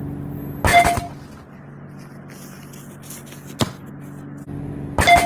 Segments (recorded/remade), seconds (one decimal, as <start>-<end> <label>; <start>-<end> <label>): 0.0-5.3 recorded